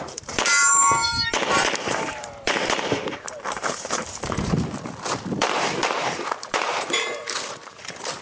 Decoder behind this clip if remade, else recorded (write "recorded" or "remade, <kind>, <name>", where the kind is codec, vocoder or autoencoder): remade, vocoder, BigVGAN v2